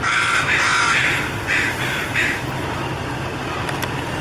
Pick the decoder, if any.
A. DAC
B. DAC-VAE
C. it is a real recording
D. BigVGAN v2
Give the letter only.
C